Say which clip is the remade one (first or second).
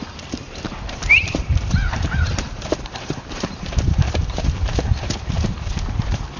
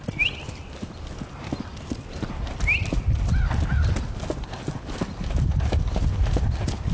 first